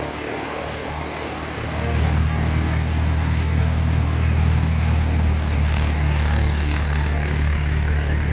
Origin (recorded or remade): remade